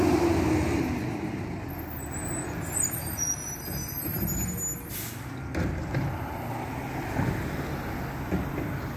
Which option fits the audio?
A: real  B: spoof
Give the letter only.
A